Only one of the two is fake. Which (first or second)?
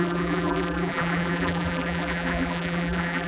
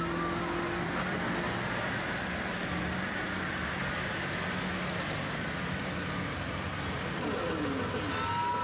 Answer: first